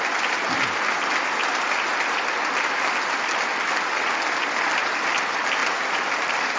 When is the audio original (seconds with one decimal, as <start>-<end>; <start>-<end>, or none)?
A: 0.0-5.6